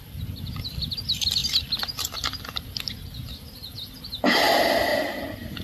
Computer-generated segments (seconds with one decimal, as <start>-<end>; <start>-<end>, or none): none